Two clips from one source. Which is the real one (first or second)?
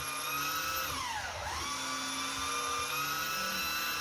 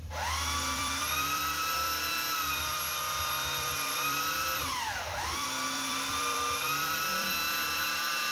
first